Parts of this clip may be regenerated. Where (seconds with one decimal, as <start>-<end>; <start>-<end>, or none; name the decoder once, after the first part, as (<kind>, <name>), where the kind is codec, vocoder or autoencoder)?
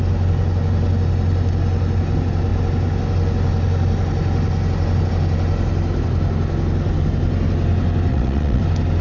8.1-8.6 (vocoder, WaveNeXt)